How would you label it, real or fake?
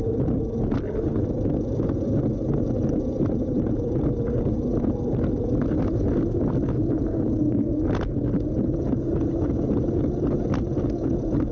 real